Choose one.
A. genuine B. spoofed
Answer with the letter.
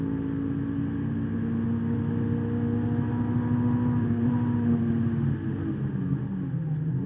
A